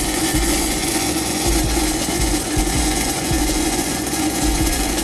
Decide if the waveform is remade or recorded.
remade